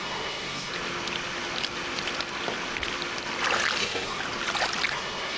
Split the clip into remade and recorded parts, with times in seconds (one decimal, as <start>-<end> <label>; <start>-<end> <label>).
0.0-0.7 remade; 0.7-3.8 recorded; 3.8-4.2 remade; 4.2-4.9 recorded; 4.9-5.4 remade